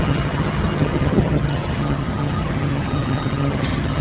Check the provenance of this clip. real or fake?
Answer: fake